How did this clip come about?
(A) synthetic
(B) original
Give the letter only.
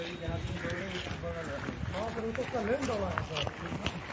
B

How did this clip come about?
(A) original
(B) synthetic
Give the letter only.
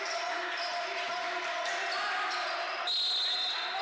A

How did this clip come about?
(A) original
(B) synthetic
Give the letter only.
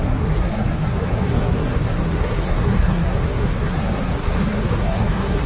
B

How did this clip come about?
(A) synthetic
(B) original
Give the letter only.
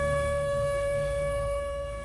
A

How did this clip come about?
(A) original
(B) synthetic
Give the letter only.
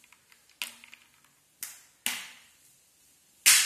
A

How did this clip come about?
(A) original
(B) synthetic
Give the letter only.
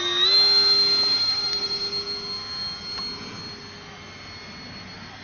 A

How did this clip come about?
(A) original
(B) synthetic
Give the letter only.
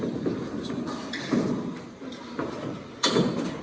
A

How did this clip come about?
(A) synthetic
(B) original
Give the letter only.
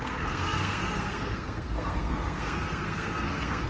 A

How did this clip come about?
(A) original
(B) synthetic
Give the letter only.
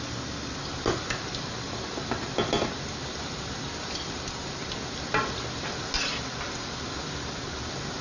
A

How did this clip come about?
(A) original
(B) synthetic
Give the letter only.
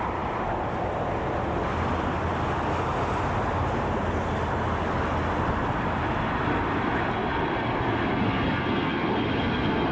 A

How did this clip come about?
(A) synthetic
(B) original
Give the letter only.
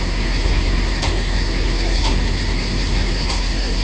A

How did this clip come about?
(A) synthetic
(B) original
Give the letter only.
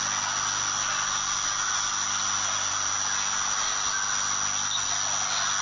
B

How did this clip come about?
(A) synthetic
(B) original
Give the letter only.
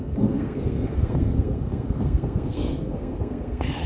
A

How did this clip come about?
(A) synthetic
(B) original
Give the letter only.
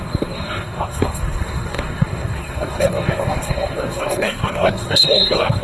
A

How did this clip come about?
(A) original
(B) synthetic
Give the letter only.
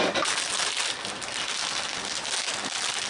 A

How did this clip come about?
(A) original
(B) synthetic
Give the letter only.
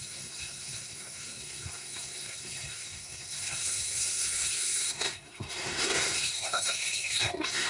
B